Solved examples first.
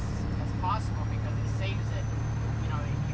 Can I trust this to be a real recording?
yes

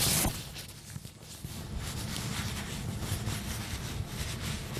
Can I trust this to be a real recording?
no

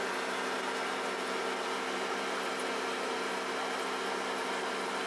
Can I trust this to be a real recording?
yes